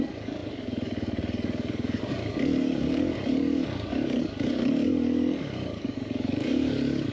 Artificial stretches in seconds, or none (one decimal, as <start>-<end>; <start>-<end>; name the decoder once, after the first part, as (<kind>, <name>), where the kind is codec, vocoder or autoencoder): 0.0-7.1 (codec, DAC)